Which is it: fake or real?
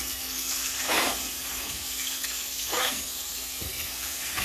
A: fake